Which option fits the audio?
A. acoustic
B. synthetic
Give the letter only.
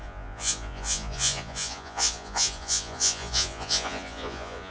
B